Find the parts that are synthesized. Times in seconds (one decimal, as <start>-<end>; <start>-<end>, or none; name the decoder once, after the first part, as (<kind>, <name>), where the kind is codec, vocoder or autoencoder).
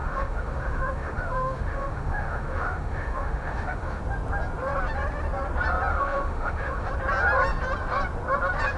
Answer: 0.0-4.0 (autoencoder, DAC-VAE); 5.9-6.9